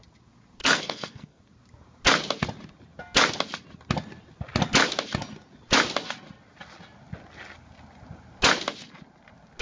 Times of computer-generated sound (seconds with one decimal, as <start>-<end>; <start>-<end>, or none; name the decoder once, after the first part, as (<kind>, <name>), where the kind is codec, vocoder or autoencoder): 0.6-1.4 (codec, SNAC)